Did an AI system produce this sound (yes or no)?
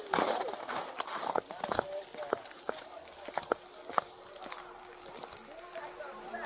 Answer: no